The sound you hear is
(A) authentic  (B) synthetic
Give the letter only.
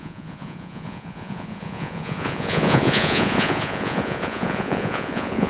B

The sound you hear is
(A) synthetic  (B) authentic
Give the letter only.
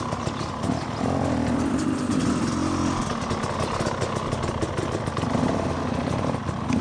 B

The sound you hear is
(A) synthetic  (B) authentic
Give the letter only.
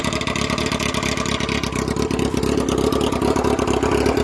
B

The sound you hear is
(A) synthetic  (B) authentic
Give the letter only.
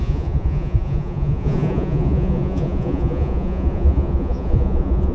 A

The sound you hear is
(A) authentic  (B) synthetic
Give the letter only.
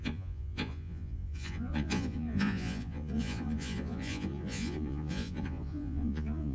B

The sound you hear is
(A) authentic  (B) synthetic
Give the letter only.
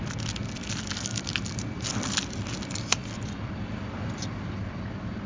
A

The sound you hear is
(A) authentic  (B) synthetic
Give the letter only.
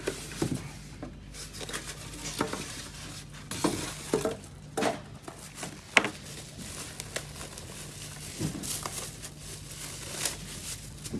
A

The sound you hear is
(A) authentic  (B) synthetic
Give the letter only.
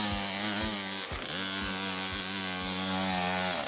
A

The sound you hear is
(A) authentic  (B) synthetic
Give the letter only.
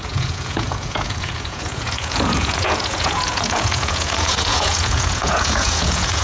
B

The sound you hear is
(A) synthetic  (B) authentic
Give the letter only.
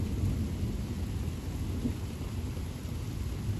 B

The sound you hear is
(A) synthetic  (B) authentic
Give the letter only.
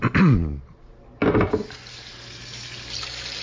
B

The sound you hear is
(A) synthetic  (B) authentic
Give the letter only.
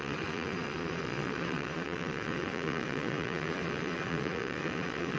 A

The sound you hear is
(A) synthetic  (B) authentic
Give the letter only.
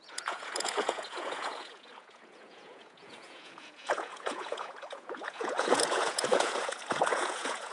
A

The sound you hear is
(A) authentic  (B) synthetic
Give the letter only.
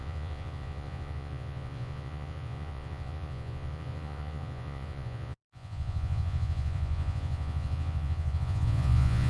B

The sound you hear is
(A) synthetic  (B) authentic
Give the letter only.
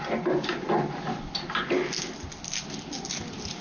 B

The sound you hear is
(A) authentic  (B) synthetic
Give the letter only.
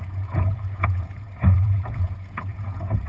B